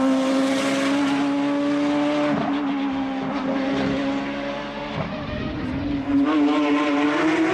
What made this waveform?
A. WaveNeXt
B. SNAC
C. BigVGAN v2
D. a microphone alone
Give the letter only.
D